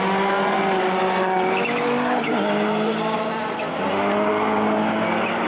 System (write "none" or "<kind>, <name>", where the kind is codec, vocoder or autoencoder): none